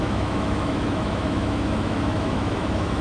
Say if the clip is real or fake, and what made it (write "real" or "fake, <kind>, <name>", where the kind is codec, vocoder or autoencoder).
fake, autoencoder, DAC-VAE